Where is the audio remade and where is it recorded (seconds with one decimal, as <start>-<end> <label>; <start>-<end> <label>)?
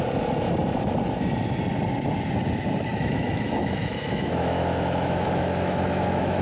0.0-2.9 recorded; 2.9-6.4 remade